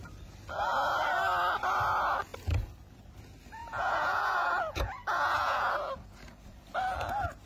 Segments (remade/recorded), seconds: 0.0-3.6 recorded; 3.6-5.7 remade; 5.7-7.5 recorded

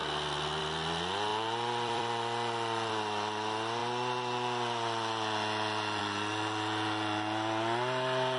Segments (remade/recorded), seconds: 0.0-1.3 recorded; 1.3-2.9 remade; 2.9-8.4 recorded